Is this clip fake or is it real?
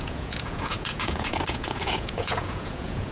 fake